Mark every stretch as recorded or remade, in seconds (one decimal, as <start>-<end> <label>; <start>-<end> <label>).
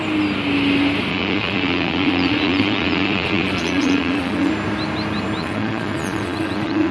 0.0-1.1 recorded; 1.1-4.5 remade; 4.5-5.4 recorded; 5.4-6.9 remade